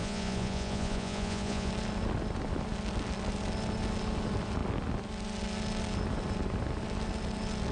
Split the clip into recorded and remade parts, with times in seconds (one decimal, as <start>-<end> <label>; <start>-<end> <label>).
0.0-1.7 remade; 1.7-7.7 recorded